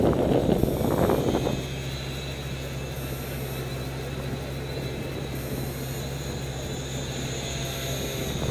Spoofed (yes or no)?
no